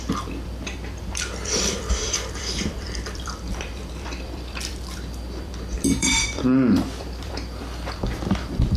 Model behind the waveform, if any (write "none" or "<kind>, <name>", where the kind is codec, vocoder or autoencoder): vocoder, BigVGAN v2